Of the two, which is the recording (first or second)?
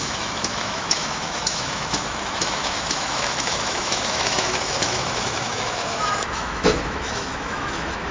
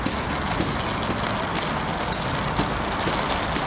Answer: second